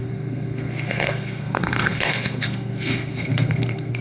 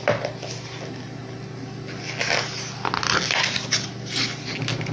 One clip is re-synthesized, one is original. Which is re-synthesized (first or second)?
first